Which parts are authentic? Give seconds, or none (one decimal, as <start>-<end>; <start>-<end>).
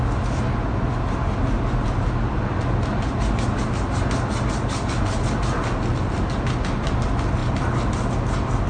0.0-8.7